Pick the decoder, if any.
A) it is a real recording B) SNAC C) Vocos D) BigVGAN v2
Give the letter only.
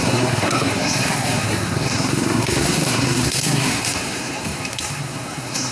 B